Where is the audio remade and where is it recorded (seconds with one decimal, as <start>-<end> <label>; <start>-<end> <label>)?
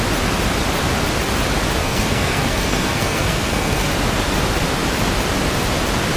0.0-1.8 recorded; 1.8-3.9 remade; 3.9-6.2 recorded